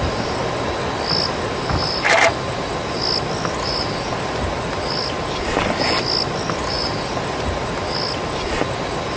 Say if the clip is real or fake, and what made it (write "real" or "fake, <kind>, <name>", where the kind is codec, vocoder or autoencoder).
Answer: real